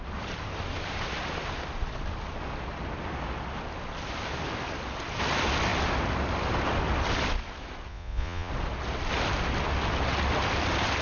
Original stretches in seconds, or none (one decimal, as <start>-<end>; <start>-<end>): 0.0-7.9; 8.5-11.0